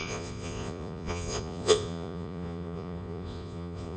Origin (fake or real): fake